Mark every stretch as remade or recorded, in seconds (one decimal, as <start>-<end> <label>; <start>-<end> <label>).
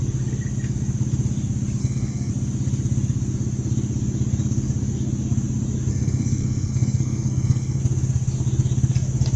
0.0-1.8 recorded; 1.8-2.3 remade; 2.3-5.9 recorded; 5.9-7.8 remade; 7.8-9.4 recorded